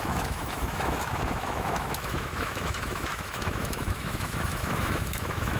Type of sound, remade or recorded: remade